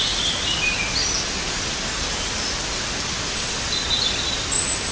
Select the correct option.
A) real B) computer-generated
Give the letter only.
A